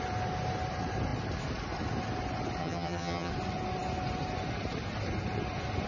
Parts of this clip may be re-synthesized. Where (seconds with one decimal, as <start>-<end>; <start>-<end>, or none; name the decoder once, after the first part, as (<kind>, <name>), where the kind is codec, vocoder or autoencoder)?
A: 2.6-3.3 (vocoder, HiFi-GAN)